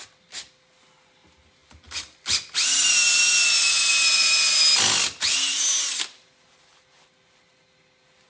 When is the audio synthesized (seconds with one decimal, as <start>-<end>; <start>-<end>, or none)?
none